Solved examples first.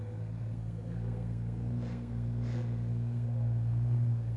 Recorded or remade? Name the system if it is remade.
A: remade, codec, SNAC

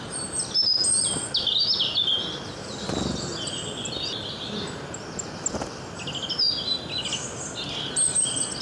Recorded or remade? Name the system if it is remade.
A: recorded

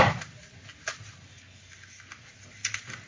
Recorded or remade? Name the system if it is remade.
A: recorded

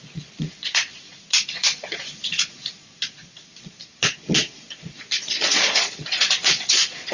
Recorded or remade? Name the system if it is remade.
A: remade, vocoder, Vocos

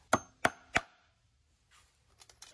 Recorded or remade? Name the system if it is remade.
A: recorded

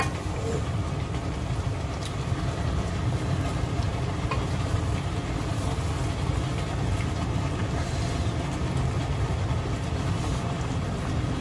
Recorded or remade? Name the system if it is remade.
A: recorded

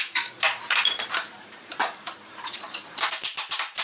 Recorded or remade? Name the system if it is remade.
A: remade, vocoder, BigVGAN v2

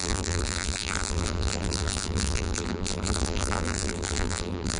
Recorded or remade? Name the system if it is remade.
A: remade, vocoder, BigVGAN v2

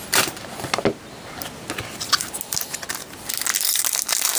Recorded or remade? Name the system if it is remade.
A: recorded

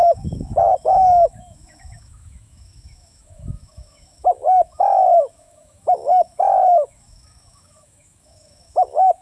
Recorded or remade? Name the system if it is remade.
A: remade, autoencoder, DAC-VAE